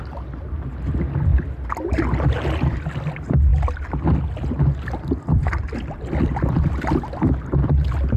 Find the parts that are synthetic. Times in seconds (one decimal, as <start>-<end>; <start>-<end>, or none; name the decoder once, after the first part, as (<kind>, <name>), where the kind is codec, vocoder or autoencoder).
none